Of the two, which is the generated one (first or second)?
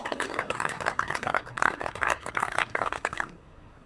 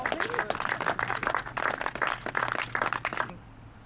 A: first